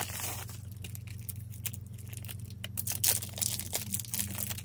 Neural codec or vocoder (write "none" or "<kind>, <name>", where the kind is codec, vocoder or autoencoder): none